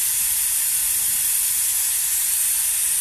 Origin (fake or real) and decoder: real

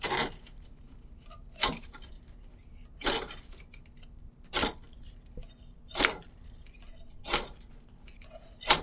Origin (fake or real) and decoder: real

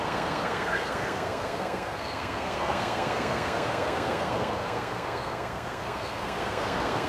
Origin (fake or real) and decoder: fake, codec, SNAC